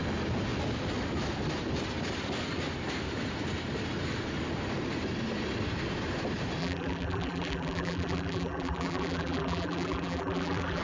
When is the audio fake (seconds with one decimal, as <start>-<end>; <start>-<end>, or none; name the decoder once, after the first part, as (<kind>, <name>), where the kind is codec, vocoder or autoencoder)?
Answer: 6.6-10.8 (vocoder, BigVGAN v2)